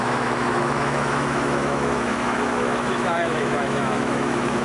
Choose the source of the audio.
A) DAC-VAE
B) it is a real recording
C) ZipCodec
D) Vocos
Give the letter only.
A